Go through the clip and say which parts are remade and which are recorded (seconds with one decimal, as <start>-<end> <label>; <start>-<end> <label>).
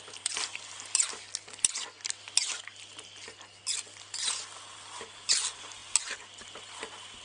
0.0-7.2 recorded